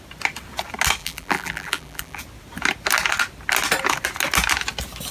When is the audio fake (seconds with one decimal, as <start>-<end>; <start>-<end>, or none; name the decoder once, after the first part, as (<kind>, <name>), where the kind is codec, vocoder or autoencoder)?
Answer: 1.0-2.2 (vocoder, BigVGAN v2)